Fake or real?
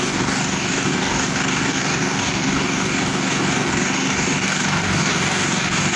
fake